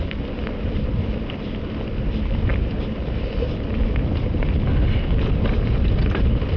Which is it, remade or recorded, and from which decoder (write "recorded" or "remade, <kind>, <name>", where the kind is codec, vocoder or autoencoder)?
recorded